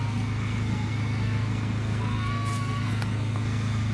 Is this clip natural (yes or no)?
no